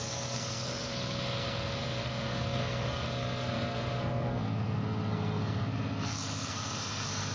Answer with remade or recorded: remade